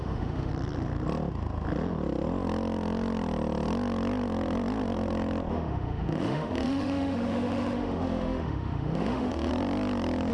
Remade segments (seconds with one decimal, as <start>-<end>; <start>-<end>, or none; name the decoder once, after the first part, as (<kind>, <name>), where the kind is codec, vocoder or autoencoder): 0.0-0.5 (autoencoder, DAC-VAE); 5.5-9.5

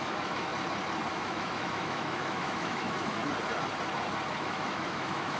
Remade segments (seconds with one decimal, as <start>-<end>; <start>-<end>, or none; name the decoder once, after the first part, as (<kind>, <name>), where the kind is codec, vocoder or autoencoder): 0.0-0.5 (autoencoder, DAC-VAE); 1.1-3.2; 4.4-5.4

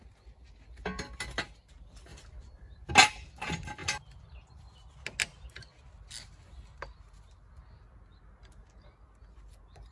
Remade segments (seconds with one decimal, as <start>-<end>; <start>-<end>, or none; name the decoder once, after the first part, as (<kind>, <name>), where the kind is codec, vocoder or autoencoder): none

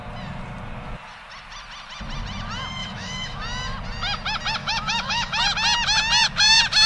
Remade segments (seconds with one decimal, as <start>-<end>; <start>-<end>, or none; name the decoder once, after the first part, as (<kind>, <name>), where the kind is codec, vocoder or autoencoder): 2.8-3.4 (autoencoder, DAC-VAE); 4.6-5.4

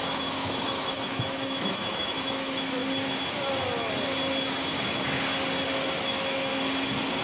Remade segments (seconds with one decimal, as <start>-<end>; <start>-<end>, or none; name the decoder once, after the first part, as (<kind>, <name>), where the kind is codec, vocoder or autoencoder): 0.0-2.8 (autoencoder, DAC-VAE); 6.0-6.5

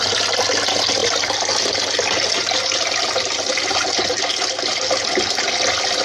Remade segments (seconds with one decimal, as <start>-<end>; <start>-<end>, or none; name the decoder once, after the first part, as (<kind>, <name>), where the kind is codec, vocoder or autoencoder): none